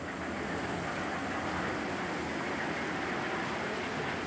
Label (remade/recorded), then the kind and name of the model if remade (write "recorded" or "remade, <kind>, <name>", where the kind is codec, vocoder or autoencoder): recorded